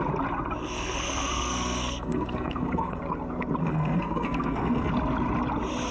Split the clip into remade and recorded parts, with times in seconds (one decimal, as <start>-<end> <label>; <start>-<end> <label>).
0.0-0.6 recorded; 0.6-3.0 remade; 3.0-3.6 recorded; 3.6-4.9 remade; 4.9-5.9 recorded